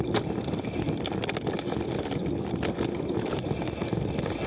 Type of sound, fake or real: real